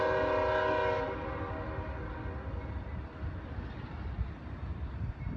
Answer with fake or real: real